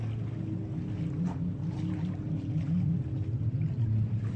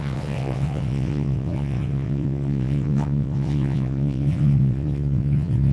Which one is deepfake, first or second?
second